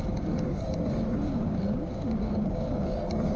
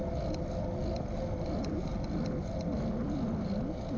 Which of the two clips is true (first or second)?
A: second